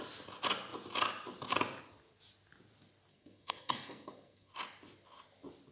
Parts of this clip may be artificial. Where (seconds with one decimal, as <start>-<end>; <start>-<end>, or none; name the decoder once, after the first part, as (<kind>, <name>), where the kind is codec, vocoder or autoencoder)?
3.1-4.5 (codec, SNAC)